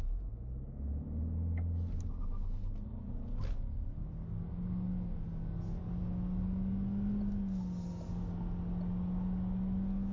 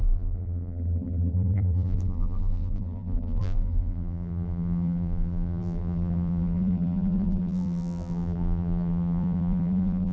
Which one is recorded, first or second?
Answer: first